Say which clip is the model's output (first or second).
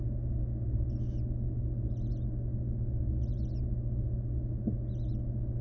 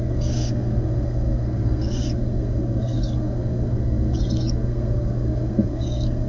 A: second